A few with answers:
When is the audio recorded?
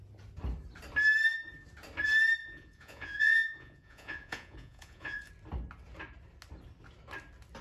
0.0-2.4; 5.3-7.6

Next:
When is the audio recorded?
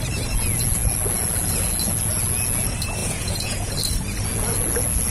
0.0-3.0; 3.7-5.1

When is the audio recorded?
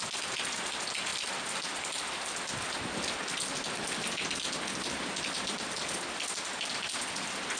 0.0-7.6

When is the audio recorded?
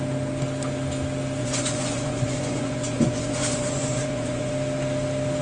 0.0-1.4; 4.5-5.4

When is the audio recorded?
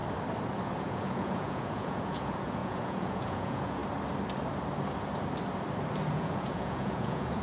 0.0-0.8; 3.8-6.1